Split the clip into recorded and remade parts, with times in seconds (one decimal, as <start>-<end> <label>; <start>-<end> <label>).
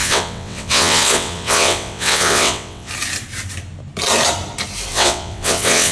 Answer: 0.0-2.9 remade; 2.9-4.9 recorded; 4.9-5.9 remade